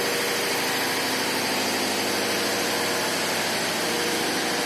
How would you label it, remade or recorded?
recorded